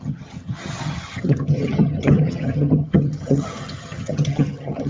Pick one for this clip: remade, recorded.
remade